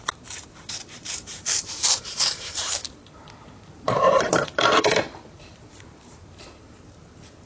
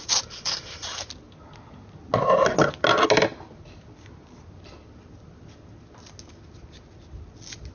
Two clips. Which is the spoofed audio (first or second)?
first